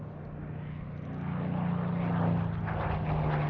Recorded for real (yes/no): yes